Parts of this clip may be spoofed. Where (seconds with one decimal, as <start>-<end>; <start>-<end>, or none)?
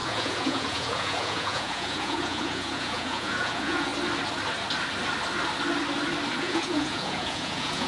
0.0-3.9; 6.4-7.9